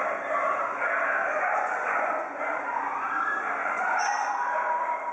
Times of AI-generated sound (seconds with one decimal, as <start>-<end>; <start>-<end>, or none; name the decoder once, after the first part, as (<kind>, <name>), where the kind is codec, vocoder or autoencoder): 1.2-3.1 (vocoder, Vocos); 3.6-4.3